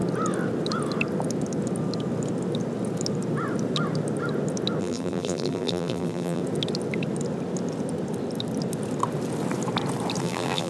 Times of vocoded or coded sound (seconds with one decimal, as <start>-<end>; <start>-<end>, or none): 4.8-6.4; 10.2-10.7